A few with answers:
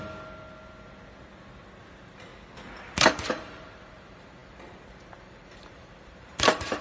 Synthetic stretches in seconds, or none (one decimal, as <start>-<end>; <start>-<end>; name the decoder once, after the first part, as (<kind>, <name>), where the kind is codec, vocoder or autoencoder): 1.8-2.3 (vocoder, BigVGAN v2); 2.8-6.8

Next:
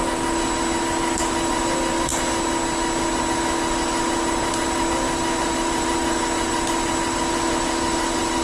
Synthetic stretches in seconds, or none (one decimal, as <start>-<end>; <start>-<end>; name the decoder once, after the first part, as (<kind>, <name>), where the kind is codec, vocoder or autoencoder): 0.8-2.1 (vocoder, BigVGAN v2); 3.3-8.4

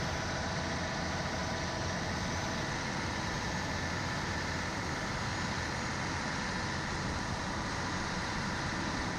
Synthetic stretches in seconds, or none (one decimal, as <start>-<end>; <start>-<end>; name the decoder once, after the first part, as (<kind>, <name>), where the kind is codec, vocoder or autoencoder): 0.0-1.4 (vocoder, BigVGAN v2); 4.2-5.3; 7.0-9.2

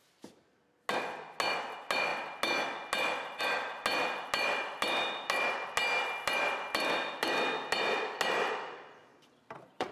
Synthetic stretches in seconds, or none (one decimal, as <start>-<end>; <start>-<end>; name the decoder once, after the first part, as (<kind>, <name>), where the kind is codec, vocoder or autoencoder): 9.1-9.9 (vocoder, BigVGAN v2)

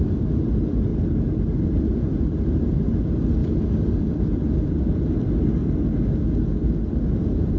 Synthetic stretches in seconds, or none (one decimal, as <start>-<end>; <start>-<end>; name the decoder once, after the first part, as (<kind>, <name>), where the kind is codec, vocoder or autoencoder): 0.0-3.4 (vocoder, BigVGAN v2); 4.0-5.6; 7.1-7.6

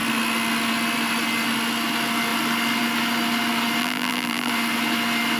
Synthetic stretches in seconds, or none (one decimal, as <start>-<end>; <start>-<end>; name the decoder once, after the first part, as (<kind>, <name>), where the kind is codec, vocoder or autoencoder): 3.8-4.5 (vocoder, BigVGAN v2)

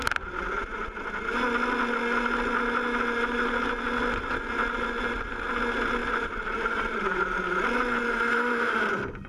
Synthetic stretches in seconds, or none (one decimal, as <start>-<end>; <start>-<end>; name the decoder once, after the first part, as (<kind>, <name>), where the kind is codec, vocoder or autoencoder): 6.0-7.2 (vocoder, BigVGAN v2); 8.3-8.9

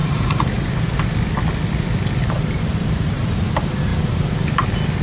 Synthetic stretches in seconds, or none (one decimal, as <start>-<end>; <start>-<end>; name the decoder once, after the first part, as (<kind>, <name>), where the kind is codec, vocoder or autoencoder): 0.0-1.0 (vocoder, BigVGAN v2); 2.2-3.3